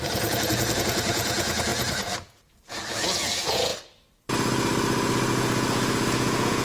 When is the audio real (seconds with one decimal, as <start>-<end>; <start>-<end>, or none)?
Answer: 3.7-5.3